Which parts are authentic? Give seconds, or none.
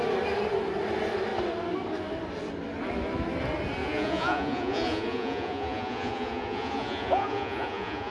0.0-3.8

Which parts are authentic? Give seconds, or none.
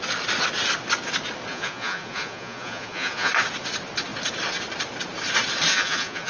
0.0-1.5; 3.3-5.7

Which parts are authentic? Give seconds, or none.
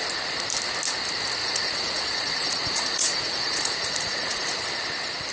0.0-1.4; 4.6-5.3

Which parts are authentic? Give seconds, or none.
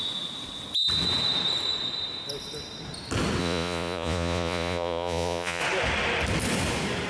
0.0-3.4; 5.6-7.1